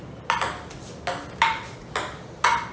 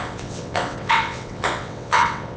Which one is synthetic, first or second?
second